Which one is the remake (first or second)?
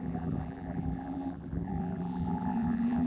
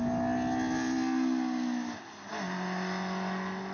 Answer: first